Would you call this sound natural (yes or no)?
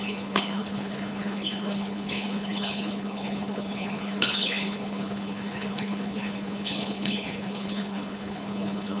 no